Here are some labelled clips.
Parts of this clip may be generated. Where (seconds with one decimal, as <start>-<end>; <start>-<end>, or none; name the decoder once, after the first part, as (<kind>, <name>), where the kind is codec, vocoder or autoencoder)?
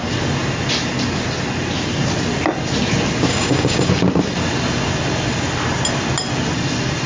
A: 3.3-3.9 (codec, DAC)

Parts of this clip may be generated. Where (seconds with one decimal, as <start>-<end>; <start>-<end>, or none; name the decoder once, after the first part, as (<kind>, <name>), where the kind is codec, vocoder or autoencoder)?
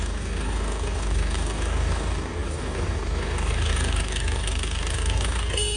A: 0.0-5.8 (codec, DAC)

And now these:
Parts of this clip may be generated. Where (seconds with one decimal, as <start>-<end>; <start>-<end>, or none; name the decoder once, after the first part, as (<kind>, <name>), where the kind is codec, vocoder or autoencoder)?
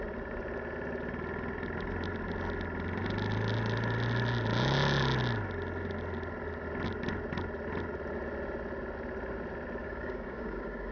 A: 9.8-10.9 (codec, DAC)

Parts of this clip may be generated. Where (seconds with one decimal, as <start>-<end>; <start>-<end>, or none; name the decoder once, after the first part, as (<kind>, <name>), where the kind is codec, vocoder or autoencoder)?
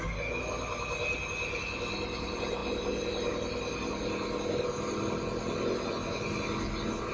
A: none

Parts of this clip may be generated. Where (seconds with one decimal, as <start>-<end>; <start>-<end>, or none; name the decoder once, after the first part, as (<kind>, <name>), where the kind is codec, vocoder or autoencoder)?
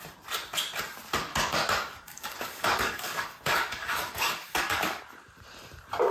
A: 1.3-5.0 (codec, DAC)